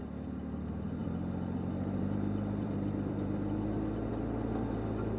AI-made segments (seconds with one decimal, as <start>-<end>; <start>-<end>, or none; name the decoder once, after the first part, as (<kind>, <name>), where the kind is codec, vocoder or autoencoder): 1.0-4.1 (vocoder, BigVGAN v2)